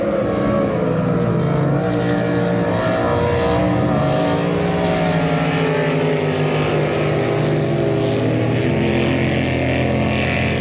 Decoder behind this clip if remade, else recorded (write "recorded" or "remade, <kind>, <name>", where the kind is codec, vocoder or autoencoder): recorded